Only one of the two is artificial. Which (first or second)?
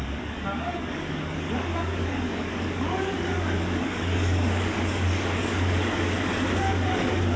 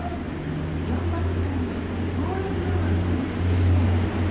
first